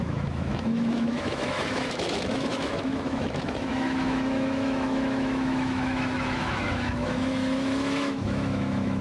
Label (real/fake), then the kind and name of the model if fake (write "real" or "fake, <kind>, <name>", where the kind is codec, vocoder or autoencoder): fake, autoencoder, DAC-VAE